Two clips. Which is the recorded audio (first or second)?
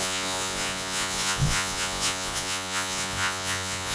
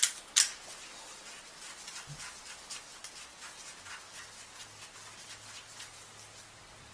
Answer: second